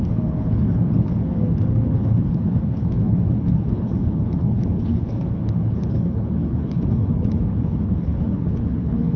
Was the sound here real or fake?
fake